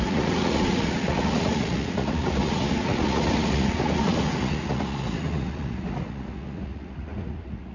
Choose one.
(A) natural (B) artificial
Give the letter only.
B